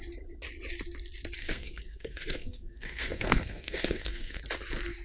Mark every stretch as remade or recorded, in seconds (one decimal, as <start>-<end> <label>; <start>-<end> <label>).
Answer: 0.0-1.4 recorded; 1.4-4.4 remade; 4.4-5.0 recorded